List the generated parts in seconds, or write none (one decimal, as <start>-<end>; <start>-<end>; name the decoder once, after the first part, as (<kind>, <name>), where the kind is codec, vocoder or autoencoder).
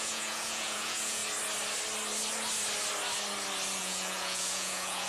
0.0-1.2 (vocoder, Vocos); 3.8-5.1